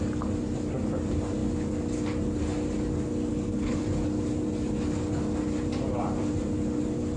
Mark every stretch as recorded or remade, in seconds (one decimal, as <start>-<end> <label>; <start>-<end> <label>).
0.0-3.3 recorded; 3.3-3.8 remade; 3.8-7.2 recorded